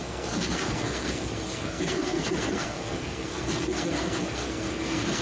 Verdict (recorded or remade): remade